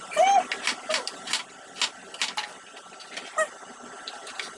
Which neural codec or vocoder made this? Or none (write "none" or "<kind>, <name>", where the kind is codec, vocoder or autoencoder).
none